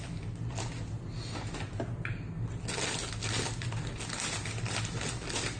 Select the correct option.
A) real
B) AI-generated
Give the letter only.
A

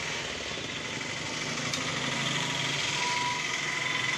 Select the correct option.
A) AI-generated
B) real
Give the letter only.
B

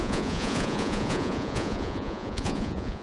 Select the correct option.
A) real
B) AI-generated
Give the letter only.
B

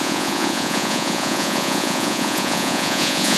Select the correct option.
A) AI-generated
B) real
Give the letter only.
A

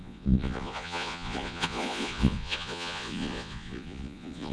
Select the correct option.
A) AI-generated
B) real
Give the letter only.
A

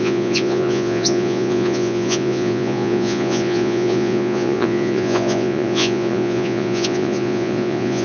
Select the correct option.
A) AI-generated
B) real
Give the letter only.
A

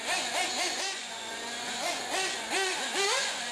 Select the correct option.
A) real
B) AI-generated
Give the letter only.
B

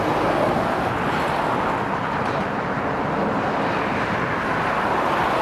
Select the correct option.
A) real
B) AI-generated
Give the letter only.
A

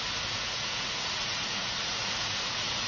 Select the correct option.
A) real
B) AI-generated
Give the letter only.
B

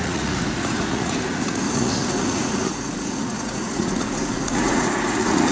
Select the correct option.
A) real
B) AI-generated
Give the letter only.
B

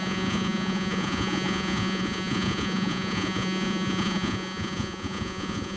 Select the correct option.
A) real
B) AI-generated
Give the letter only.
B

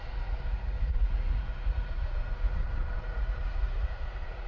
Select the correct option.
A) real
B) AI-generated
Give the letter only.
B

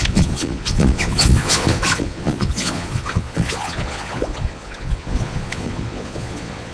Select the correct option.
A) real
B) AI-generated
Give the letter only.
B